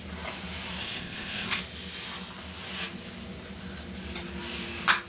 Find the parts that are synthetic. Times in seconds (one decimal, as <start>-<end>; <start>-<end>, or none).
0.8-1.6